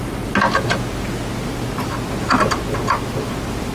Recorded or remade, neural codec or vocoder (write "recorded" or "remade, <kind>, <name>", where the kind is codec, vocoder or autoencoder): recorded